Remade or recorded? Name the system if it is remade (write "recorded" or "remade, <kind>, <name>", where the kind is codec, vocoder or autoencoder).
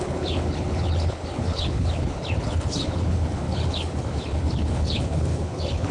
remade, codec, HILCodec